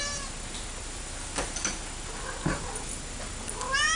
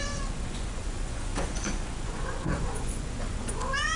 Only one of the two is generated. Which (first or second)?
second